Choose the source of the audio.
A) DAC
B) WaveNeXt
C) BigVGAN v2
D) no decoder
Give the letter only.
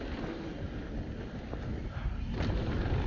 D